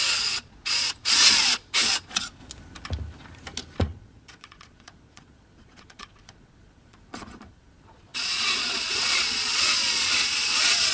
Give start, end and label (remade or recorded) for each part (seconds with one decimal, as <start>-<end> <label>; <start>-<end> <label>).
0.0-2.4 remade; 2.4-3.8 recorded; 3.8-10.9 remade